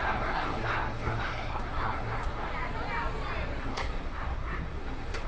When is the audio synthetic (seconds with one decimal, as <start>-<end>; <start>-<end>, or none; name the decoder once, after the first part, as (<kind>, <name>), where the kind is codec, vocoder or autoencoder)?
0.0-2.5 (codec, SNAC); 3.6-5.3